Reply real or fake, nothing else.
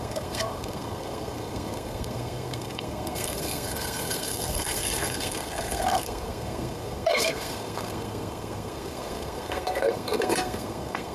fake